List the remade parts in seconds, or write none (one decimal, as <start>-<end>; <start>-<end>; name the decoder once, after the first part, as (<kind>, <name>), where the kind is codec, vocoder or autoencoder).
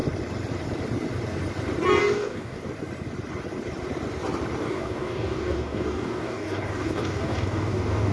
2.0-2.6 (codec, DAC); 4.6-8.1